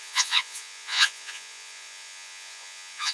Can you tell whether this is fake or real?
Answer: fake